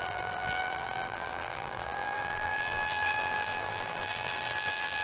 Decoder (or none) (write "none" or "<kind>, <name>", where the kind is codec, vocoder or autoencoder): vocoder, BigVGAN v2